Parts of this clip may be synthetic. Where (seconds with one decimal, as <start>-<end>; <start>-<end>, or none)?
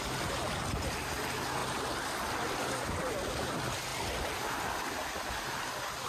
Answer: none